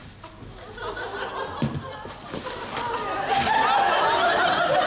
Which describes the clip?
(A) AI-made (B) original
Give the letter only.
B